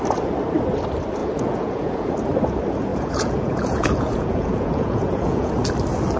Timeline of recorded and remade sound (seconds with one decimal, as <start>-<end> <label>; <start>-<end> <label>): 0.0-1.2 recorded; 1.2-2.1 remade; 2.1-2.9 recorded; 2.9-5.5 remade; 5.5-6.2 recorded